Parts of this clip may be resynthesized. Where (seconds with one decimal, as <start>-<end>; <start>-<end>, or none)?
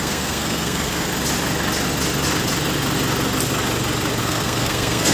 0.0-1.1; 4.2-5.1